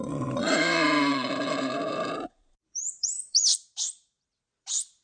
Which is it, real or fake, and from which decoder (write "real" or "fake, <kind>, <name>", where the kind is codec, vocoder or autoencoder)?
fake, vocoder, BigVGAN v2